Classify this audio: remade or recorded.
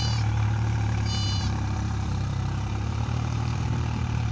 remade